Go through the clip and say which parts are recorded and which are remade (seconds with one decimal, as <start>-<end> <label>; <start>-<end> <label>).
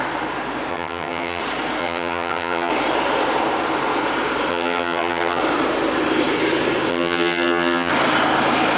0.0-0.7 recorded; 0.7-1.4 remade; 1.4-1.8 recorded; 1.8-2.7 remade; 2.7-4.5 recorded; 4.5-5.4 remade; 5.4-6.9 recorded; 6.9-7.9 remade; 7.9-8.8 recorded